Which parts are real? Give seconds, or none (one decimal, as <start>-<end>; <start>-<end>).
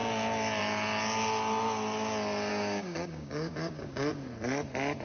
0.0-2.5; 4.1-5.0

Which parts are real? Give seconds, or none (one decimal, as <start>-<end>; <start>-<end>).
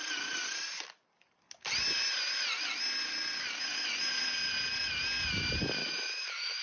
0.0-5.8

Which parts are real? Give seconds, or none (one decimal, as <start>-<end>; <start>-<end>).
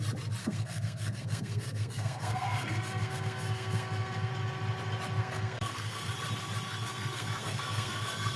0.0-0.4; 4.3-5.2; 6.1-6.8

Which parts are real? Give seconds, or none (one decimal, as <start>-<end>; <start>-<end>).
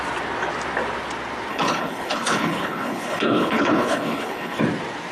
0.0-1.5; 4.6-5.1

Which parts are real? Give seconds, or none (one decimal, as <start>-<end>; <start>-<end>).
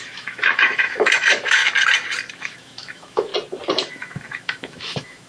1.6-2.3; 3.3-3.9